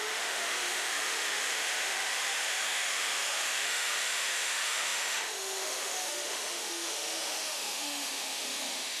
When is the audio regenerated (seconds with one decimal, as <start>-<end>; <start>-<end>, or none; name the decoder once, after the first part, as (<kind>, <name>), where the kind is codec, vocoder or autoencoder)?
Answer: 0.0-9.0 (autoencoder, DAC-VAE)